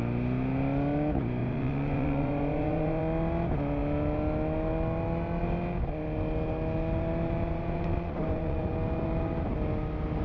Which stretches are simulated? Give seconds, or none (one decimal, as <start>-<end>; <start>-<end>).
1.4-3.0; 7.5-8.7